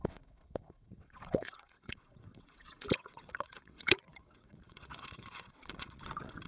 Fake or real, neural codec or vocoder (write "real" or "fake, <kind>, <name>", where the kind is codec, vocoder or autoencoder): fake, vocoder, WaveNeXt